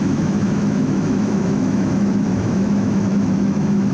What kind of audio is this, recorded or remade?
remade